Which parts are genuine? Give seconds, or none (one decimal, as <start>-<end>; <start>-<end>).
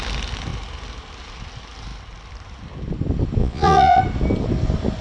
0.0-3.4; 4.0-5.0